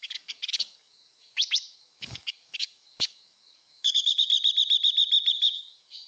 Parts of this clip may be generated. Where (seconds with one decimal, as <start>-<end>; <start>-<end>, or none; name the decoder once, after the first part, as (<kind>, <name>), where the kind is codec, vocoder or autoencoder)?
0.0-4.3 (codec, DAC); 5.3-6.1

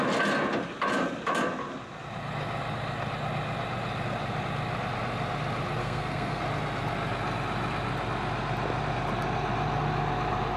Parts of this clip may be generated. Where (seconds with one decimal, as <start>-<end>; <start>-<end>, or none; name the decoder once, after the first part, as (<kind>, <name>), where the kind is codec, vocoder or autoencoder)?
5.8-6.4 (codec, SNAC)

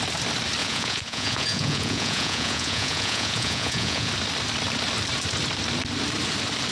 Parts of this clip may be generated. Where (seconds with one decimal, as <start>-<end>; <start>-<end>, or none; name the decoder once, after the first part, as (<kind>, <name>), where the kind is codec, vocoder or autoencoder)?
0.6-4.1 (vocoder, Vocos)

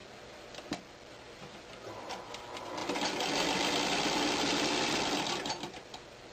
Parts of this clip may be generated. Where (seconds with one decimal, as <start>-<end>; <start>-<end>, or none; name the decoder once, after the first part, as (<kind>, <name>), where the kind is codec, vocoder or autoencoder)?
none

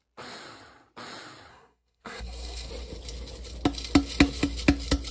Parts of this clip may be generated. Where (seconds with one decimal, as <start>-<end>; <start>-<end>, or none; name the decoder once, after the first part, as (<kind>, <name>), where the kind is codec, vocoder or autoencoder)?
1.5-2.7 (codec, SNAC)

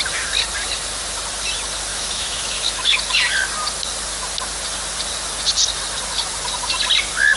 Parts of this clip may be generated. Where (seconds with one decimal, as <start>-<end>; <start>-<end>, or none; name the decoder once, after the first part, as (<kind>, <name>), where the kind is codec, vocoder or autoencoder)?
1.9-3.0 (autoencoder, DAC-VAE)

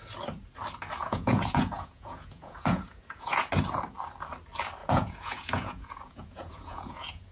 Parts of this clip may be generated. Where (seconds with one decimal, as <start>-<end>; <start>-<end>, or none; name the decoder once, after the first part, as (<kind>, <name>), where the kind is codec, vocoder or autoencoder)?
1.0-3.5 (vocoder, Vocos); 4.8-7.3

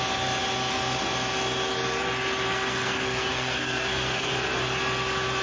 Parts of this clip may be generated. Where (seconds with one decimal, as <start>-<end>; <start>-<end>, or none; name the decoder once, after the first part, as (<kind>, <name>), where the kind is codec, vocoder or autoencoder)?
2.5-4.3 (codec, SNAC)